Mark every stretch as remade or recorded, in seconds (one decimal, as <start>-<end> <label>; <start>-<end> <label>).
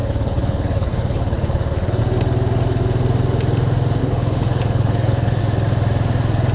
0.0-2.0 remade; 2.0-4.0 recorded; 4.0-5.4 remade; 5.4-6.5 recorded